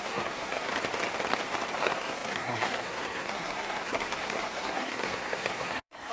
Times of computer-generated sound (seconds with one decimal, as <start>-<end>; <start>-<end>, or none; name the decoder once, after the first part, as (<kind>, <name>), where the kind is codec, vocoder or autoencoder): 0.0-0.7 (codec, SNAC); 1.8-6.1